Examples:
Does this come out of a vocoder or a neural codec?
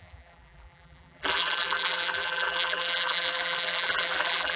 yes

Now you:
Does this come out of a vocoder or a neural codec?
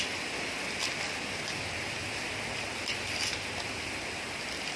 no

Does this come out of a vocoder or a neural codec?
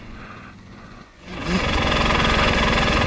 yes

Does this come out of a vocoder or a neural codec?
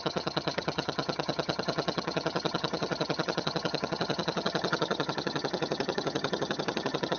yes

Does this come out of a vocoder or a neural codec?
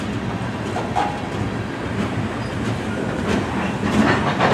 no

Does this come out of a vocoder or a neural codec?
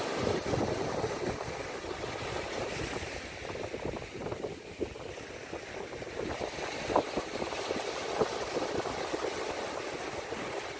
no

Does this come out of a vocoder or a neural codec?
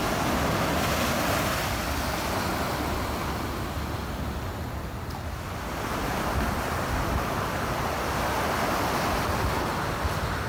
no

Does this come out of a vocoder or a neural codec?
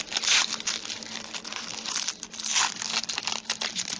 no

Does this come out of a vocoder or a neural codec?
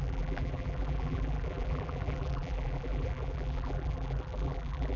yes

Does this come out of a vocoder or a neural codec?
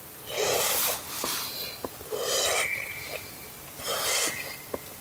no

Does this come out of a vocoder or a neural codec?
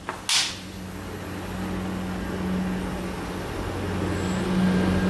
no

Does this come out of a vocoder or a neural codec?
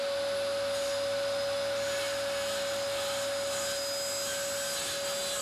no